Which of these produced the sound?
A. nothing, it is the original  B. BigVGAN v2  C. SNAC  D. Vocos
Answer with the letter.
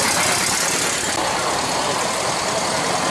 A